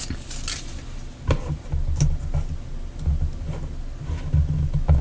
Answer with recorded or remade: recorded